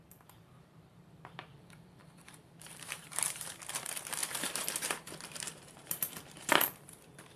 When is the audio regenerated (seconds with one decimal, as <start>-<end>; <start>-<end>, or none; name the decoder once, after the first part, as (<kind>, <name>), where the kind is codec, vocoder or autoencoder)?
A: 0.0-7.4 (vocoder, BigVGAN v2)